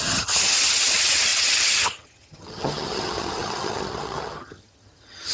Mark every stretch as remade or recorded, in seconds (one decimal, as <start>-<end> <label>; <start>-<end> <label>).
0.0-5.3 remade

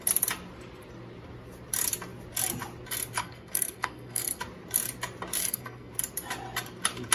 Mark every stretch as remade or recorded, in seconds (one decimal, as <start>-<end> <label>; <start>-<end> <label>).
0.0-3.2 recorded; 3.2-4.4 remade; 4.4-5.4 recorded; 5.4-5.9 remade; 5.9-7.1 recorded